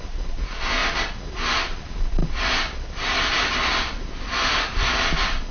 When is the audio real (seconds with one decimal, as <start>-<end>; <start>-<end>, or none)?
0.0-5.5